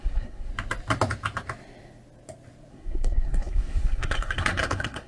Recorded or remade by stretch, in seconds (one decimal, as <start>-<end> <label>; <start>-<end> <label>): 0.0-0.5 remade; 0.5-2.7 recorded; 2.7-5.1 remade